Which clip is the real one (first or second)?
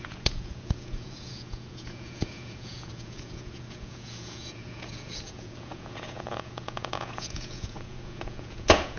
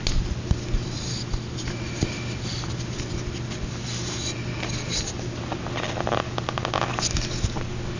second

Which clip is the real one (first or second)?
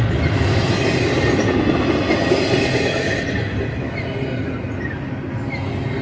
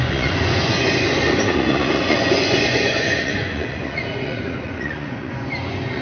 first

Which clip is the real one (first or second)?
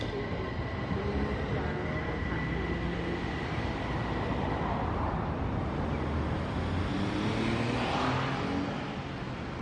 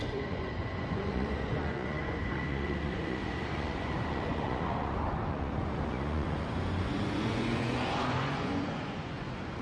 first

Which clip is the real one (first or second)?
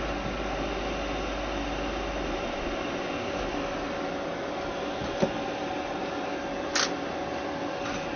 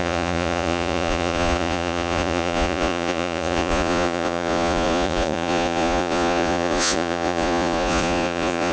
first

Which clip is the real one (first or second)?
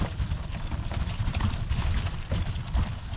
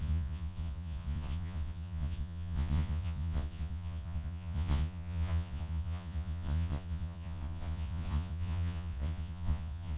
first